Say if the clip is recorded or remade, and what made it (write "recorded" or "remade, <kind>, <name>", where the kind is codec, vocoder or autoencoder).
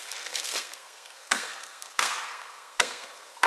remade, codec, SNAC